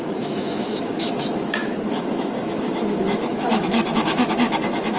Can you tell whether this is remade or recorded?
remade